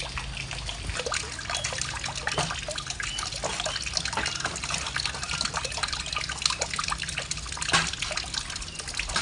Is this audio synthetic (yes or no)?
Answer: no